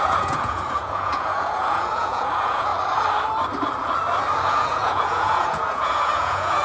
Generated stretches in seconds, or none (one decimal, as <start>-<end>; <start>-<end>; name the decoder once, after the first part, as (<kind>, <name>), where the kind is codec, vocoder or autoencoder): 0.0-2.7 (vocoder, Vocos); 4.5-6.6